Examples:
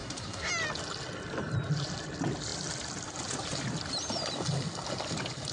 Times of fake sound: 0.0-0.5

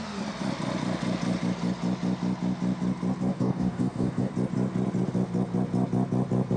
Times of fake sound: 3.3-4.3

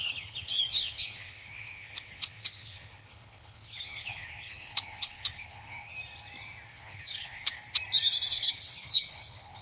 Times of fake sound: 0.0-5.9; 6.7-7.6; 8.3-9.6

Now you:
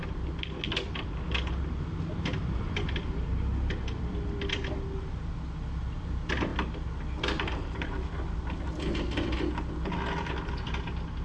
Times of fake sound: none

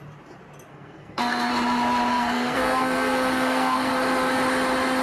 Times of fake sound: 0.7-1.5; 2.1-3.9